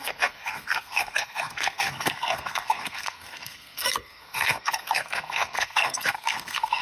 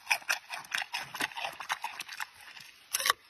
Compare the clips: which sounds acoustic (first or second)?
second